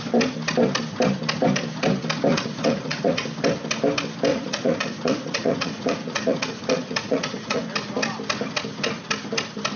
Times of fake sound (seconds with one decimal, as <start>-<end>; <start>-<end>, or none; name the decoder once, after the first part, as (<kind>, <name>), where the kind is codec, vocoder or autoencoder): 2.3-3.3 (vocoder, Vocos); 4.3-7.6